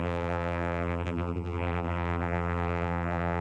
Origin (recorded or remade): remade